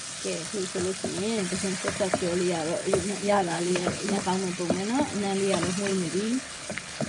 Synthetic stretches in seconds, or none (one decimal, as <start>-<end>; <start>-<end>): 2.8-4.2; 5.9-7.1